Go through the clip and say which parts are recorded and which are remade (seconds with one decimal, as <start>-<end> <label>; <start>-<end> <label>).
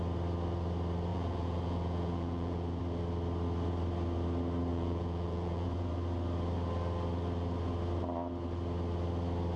0.0-1.1 recorded; 1.1-2.8 remade; 2.8-4.7 recorded; 4.7-5.9 remade; 5.9-9.6 recorded